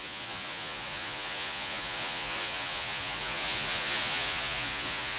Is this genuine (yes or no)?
no